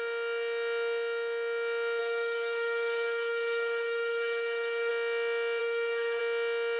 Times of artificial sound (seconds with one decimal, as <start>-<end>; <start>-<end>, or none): 2.0-4.9; 5.6-6.2